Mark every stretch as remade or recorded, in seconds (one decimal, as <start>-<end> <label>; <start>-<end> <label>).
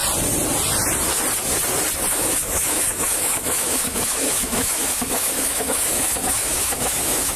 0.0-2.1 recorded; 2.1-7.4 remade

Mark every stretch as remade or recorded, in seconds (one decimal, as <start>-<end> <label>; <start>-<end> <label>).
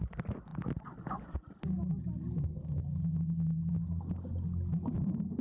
0.0-5.4 recorded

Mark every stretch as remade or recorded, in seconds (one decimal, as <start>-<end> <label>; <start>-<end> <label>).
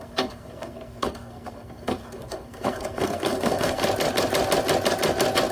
0.0-3.8 remade; 3.8-5.5 recorded